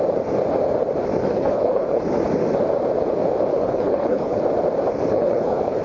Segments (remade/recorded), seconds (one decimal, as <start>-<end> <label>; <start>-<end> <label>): 0.0-1.2 recorded; 1.2-2.0 remade; 2.0-3.5 recorded; 3.5-4.4 remade; 4.4-5.1 recorded; 5.1-5.8 remade